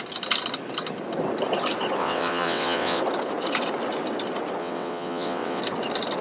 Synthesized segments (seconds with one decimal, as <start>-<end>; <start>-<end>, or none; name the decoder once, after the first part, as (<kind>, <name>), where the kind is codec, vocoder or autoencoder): 2.0-3.0 (vocoder, WaveNeXt); 4.6-5.6